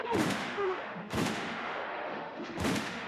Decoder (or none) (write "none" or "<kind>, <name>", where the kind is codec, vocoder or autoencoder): autoencoder, DAC-VAE